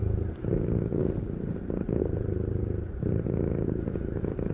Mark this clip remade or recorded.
remade